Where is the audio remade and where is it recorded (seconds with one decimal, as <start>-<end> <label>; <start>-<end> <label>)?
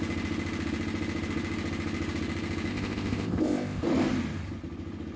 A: 0.0-2.7 recorded; 2.7-3.8 remade; 3.8-5.2 recorded